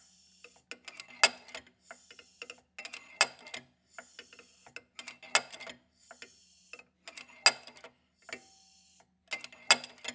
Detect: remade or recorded recorded